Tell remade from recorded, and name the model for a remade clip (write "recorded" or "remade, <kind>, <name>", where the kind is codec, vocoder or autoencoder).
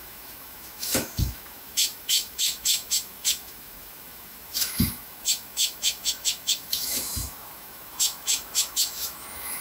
remade, autoencoder, DAC-VAE